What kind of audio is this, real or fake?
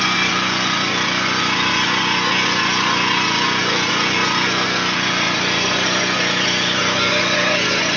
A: fake